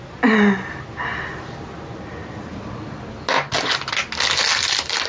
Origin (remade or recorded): recorded